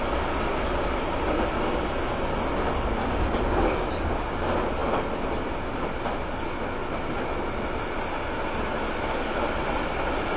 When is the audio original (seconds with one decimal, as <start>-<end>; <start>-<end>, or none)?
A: 0.0-3.0; 4.3-10.4